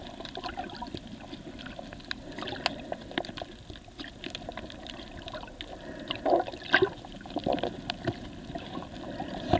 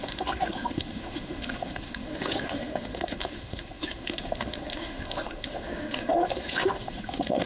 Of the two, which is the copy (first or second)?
second